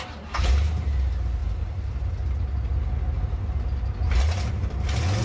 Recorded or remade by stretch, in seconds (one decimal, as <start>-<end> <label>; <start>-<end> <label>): 0.0-5.2 recorded